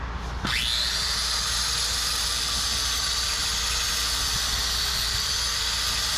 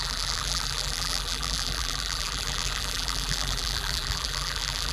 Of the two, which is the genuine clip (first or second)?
first